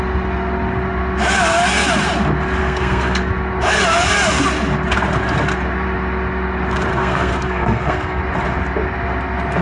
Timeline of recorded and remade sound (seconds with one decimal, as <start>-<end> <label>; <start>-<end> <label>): 0.0-2.6 recorded; 2.6-3.3 remade; 3.3-6.9 recorded; 6.9-8.2 remade; 8.2-9.6 recorded